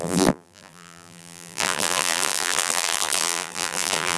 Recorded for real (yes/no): no